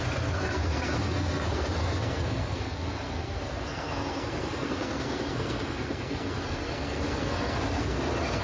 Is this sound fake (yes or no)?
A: yes